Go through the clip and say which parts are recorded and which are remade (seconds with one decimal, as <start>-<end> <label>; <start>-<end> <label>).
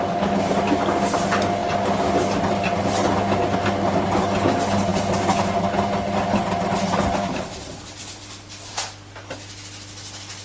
0.0-10.4 recorded